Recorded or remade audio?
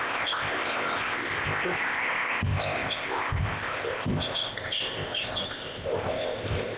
remade